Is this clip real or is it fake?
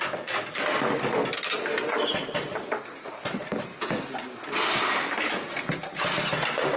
real